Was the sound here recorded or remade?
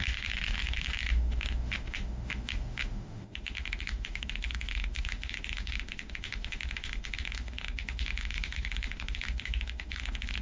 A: remade